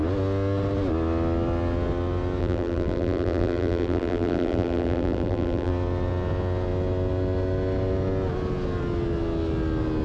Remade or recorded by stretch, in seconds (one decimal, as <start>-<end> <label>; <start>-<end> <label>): 0.0-2.4 recorded; 2.4-5.7 remade; 5.7-10.0 recorded